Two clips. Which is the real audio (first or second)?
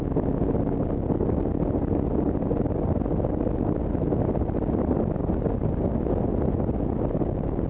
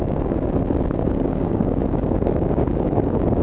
first